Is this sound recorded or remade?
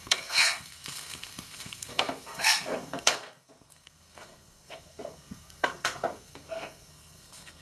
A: remade